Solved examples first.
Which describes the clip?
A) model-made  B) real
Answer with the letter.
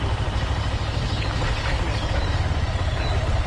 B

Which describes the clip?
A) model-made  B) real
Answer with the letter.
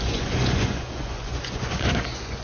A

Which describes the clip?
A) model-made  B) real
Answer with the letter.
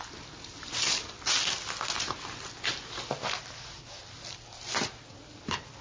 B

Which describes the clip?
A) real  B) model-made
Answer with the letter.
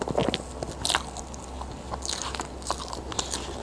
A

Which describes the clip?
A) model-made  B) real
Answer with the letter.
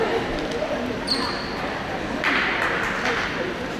B